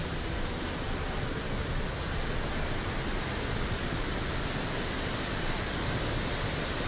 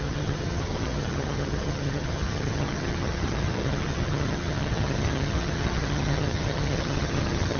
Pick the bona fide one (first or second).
first